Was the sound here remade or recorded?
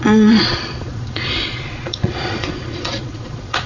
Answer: remade